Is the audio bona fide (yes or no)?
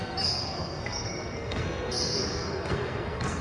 no